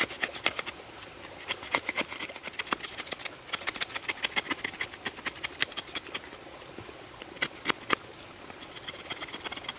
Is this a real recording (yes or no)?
yes